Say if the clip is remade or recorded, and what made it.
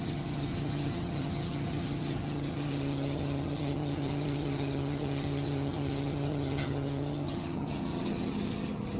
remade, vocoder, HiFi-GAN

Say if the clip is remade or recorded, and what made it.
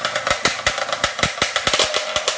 recorded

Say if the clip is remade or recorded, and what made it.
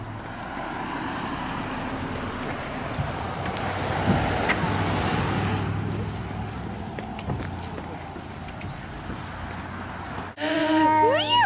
recorded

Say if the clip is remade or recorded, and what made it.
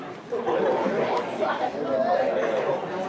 recorded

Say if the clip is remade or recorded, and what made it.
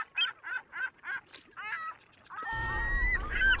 recorded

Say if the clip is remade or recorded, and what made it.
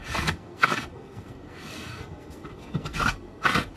remade, codec, SNAC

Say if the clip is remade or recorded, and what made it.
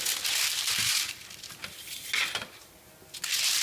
recorded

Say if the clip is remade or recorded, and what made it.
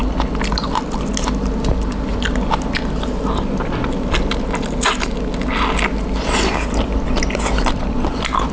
recorded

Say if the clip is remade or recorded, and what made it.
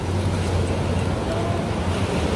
recorded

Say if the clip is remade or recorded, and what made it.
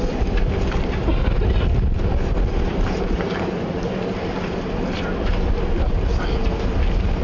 remade, vocoder, BigVGAN v2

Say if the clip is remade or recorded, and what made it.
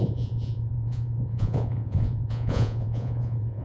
remade, vocoder, Vocos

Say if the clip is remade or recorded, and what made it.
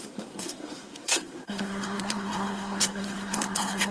remade, codec, SNAC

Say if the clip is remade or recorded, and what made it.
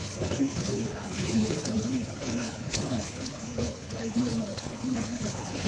remade, codec, HILCodec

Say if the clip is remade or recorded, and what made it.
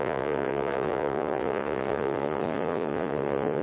remade, vocoder, Vocos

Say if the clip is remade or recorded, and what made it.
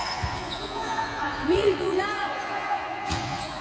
remade, vocoder, Vocos